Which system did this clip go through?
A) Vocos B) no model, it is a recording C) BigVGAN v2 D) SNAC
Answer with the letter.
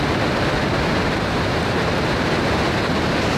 B